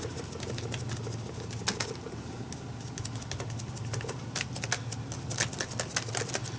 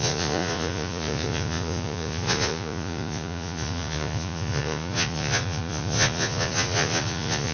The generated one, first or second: second